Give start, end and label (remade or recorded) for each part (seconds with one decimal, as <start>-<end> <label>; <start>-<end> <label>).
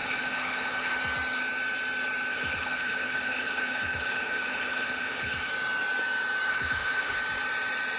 0.0-1.0 remade; 1.0-2.3 recorded; 2.3-5.5 remade; 5.5-6.5 recorded; 6.5-7.2 remade; 7.2-8.0 recorded